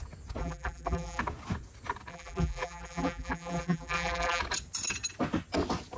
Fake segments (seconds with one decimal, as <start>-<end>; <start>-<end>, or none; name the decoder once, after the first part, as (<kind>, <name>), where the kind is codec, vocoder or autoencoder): 0.4-1.2 (vocoder, BigVGAN v2); 2.1-4.4